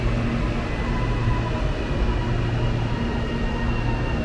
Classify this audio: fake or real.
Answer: real